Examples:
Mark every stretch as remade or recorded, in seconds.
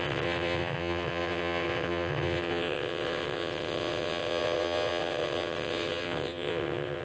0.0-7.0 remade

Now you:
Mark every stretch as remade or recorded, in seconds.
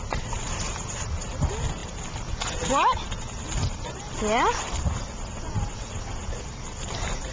0.0-7.3 recorded